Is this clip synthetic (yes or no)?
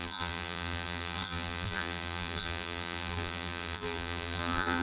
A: yes